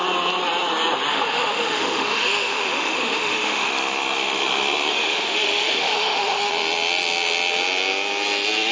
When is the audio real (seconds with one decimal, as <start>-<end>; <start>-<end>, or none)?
0.0-1.1; 3.7-4.9; 6.5-8.7